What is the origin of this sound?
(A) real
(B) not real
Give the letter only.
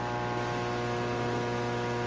A